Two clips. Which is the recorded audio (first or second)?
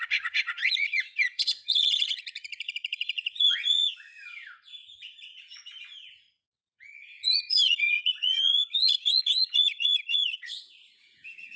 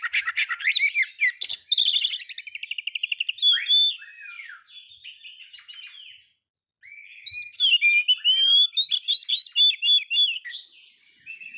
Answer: second